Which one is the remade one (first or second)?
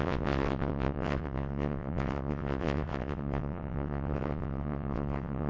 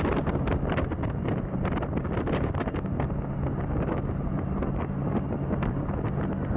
first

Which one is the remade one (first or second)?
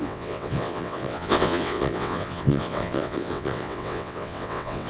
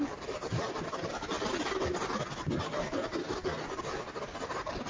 first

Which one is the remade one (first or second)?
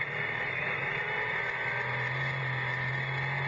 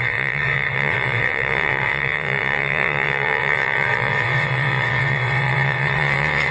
second